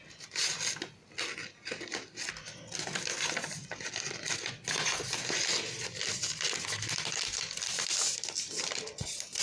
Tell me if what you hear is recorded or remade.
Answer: recorded